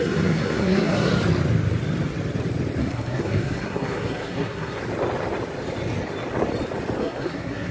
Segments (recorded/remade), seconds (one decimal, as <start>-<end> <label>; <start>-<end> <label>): 0.0-1.1 remade; 1.1-2.8 recorded; 2.8-4.8 remade; 4.8-7.0 recorded; 7.0-7.7 remade